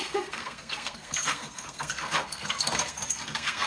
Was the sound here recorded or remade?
remade